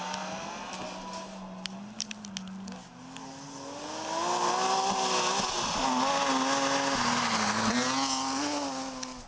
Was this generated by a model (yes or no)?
no